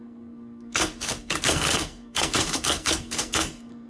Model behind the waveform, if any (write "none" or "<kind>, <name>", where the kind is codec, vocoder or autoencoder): codec, SNAC